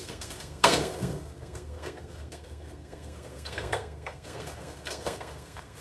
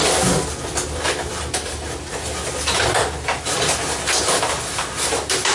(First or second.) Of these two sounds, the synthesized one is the first